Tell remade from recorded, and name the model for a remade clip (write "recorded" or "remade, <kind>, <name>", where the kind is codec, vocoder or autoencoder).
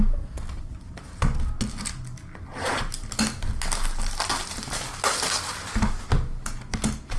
recorded